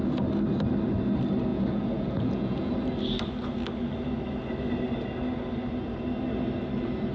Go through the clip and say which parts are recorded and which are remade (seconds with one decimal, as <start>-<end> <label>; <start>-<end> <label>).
0.0-1.5 recorded; 1.5-2.7 remade; 2.7-7.1 recorded